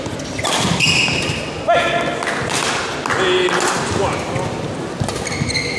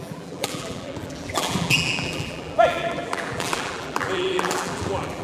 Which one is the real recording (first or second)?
first